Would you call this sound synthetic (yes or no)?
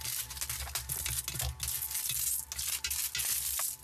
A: no